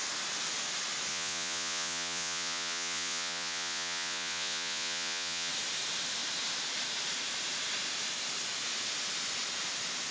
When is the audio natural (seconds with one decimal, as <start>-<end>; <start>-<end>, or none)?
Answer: 0.0-1.1; 5.5-10.1

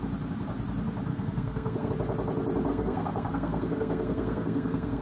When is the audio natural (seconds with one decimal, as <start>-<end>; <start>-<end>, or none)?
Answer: 0.0-1.1; 1.9-2.7